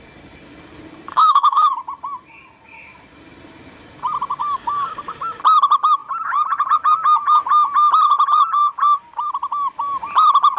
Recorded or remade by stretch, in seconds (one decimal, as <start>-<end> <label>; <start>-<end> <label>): 0.0-1.1 recorded; 1.1-1.7 remade; 1.7-4.4 recorded; 4.4-5.4 remade; 5.4-10.6 recorded